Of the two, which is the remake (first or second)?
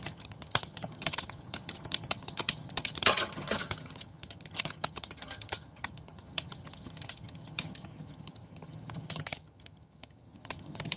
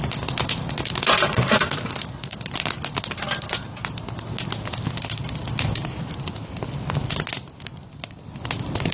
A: first